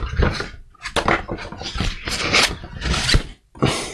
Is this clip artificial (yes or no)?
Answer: no